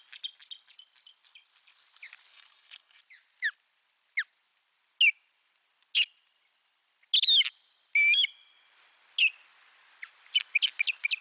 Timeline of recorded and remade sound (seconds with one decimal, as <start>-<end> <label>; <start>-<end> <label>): 0.0-2.3 recorded; 2.3-3.0 remade; 3.0-11.2 recorded